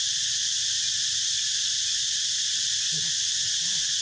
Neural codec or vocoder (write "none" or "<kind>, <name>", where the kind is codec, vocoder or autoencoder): none